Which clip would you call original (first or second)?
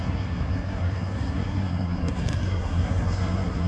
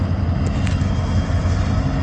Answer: second